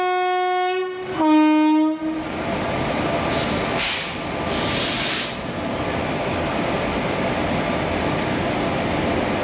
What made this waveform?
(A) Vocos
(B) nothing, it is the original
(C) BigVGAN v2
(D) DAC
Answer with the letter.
B